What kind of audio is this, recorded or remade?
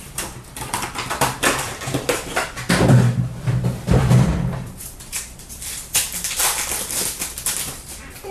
remade